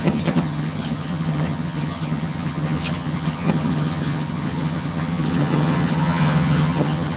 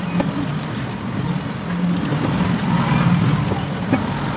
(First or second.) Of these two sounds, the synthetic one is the first